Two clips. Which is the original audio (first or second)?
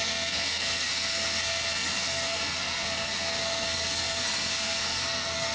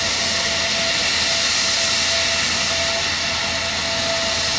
second